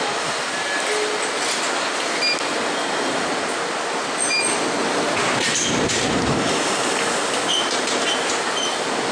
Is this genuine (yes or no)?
yes